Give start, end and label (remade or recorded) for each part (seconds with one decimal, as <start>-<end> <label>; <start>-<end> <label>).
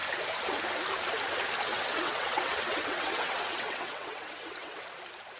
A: 0.0-1.7 recorded; 1.7-4.8 remade; 4.8-5.4 recorded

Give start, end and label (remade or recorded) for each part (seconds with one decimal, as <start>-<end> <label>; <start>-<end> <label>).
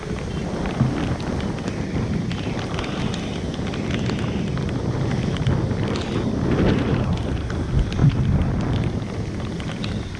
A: 0.0-10.2 recorded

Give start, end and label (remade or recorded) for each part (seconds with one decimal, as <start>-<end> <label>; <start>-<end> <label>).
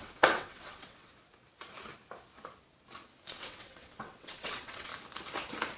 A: 0.0-1.1 remade; 1.1-3.3 recorded; 3.3-4.9 remade; 4.9-5.8 recorded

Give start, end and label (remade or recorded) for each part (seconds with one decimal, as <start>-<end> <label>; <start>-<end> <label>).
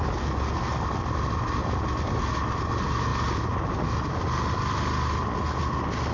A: 0.0-6.1 recorded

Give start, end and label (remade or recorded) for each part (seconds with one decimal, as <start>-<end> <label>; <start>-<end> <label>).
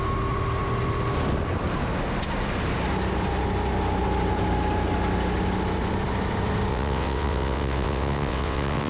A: 0.0-6.7 recorded; 6.7-8.9 remade